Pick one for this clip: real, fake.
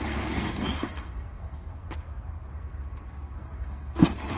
fake